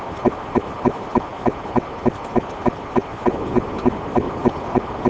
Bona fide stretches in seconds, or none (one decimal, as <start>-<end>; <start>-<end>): 0.0-5.1